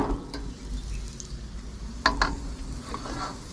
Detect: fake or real real